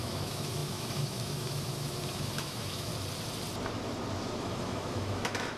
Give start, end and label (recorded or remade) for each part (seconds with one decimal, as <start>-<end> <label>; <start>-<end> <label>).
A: 0.0-2.9 remade; 2.9-4.4 recorded; 4.4-5.6 remade